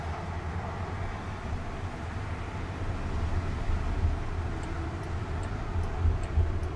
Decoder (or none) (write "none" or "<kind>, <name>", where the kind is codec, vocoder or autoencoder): none